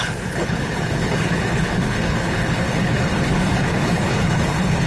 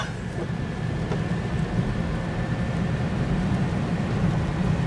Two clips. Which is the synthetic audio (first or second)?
first